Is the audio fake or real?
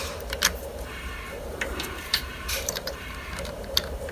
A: fake